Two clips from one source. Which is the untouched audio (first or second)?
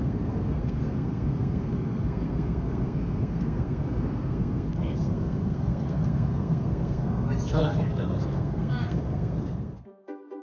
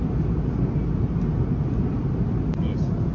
second